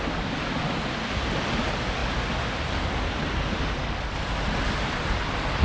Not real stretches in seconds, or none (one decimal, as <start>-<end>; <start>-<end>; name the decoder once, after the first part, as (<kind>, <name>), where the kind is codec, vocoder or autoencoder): none